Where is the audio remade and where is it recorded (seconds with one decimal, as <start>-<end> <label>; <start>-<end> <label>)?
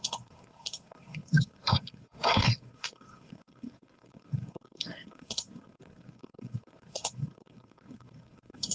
0.0-8.7 remade